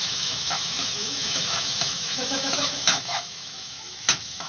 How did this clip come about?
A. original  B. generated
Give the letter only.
B